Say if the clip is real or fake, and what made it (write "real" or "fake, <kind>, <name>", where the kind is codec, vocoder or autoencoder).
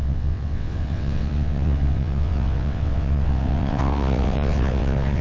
fake, vocoder, WaveNeXt